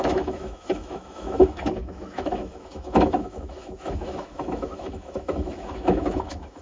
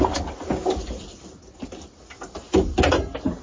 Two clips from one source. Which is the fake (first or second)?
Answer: first